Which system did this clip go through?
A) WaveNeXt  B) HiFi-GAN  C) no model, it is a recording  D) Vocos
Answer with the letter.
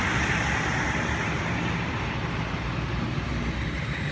C